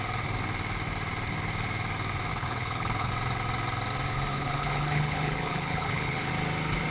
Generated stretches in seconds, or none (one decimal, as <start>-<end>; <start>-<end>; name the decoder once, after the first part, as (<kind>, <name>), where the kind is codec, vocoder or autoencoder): 2.3-3.1 (codec, HILCodec); 4.3-6.3